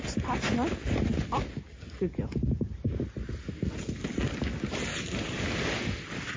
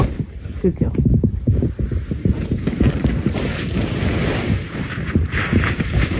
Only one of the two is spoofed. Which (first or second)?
second